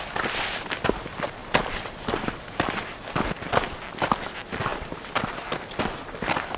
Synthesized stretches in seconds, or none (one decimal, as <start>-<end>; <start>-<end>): 1.4-3.5; 4.7-5.3